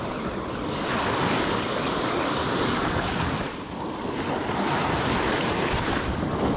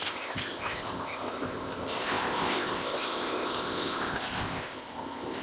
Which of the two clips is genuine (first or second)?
first